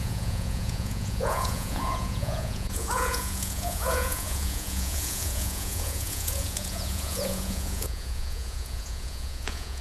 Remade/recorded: remade